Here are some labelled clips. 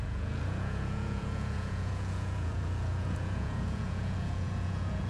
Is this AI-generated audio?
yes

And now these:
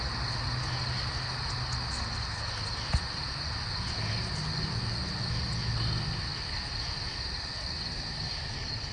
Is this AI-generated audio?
no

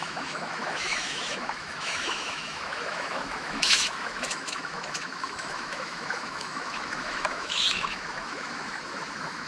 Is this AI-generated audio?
yes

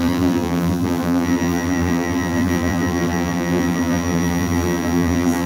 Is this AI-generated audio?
yes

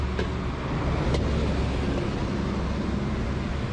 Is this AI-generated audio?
no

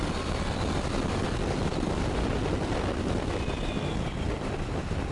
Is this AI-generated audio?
yes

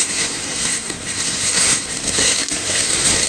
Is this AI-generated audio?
yes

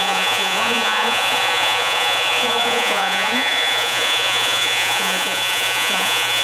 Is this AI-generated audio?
yes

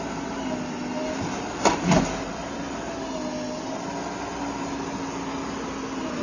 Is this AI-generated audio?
no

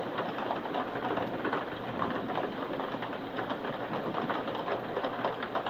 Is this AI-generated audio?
no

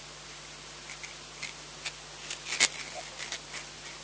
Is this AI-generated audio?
no